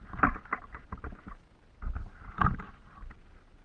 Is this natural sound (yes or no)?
yes